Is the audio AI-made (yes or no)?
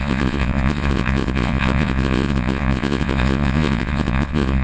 yes